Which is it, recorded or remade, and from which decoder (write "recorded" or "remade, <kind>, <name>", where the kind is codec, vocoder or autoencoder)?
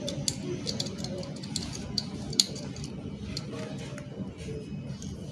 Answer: recorded